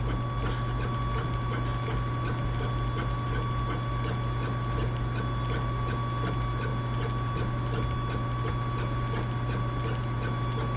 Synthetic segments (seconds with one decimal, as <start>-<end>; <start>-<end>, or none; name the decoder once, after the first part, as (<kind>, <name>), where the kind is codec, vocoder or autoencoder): none